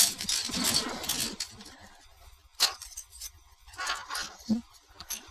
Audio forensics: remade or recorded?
recorded